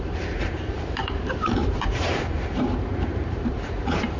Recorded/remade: remade